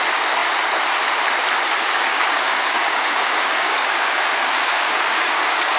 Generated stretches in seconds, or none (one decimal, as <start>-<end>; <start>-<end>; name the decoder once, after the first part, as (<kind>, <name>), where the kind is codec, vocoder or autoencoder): 2.1-5.8 (codec, DAC)